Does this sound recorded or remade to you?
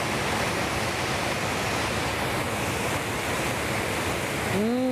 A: recorded